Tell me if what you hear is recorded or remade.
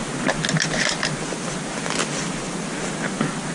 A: recorded